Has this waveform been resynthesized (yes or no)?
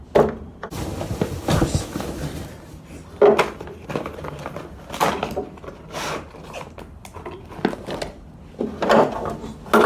no